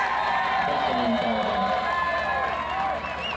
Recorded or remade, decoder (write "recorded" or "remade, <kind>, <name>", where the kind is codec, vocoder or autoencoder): recorded